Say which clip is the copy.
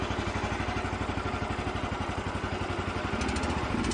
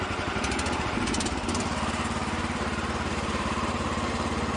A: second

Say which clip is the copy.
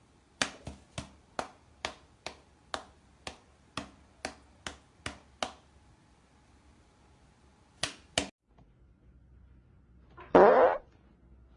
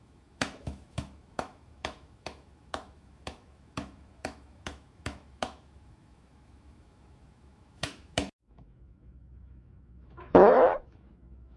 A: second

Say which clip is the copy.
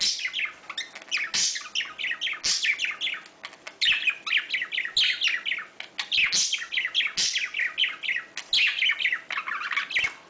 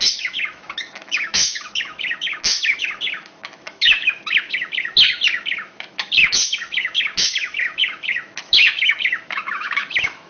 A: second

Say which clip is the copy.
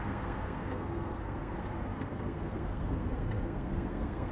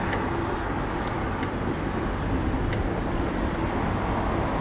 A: first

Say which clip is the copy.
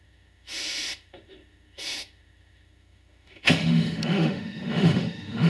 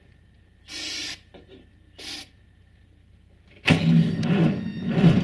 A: first